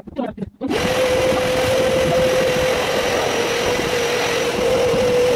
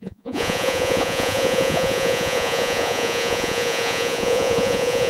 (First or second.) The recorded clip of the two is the first